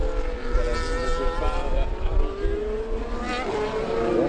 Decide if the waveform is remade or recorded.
recorded